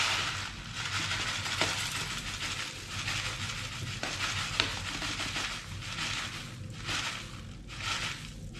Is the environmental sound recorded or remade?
recorded